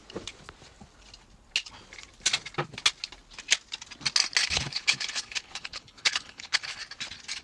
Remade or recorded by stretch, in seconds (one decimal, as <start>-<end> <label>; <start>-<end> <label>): 0.0-4.4 recorded; 4.4-6.8 remade; 6.8-7.4 recorded